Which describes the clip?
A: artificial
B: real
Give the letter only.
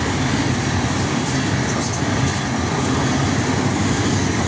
B